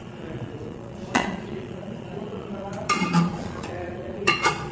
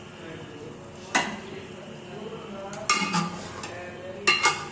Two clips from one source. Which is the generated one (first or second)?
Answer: first